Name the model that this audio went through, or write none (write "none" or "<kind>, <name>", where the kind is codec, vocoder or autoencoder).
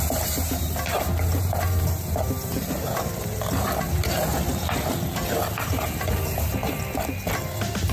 vocoder, BigVGAN v2